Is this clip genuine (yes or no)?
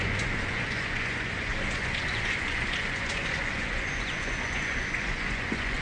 no